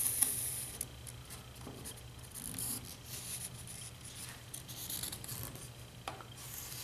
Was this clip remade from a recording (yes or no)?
no